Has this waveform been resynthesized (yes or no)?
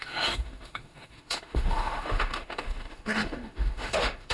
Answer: yes